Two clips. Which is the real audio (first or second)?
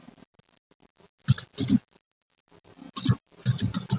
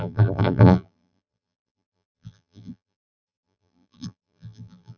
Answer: first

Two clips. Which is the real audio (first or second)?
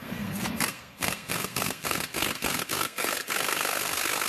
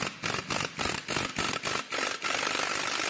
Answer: second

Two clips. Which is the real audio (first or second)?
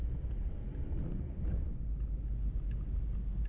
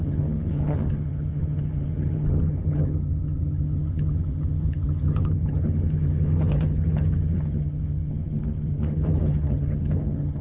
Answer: first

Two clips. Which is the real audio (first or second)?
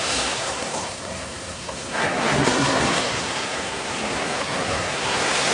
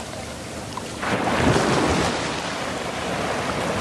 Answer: second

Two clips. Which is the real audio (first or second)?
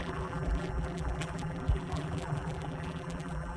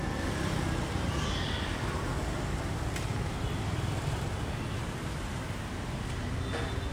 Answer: second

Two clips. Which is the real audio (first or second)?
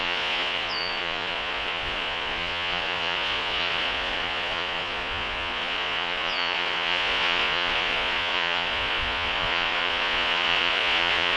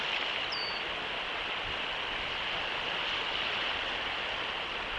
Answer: second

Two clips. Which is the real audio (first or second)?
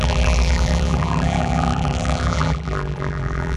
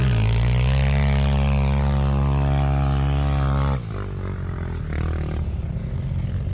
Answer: second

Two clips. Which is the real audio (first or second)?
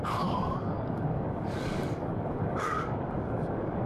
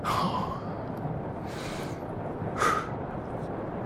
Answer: second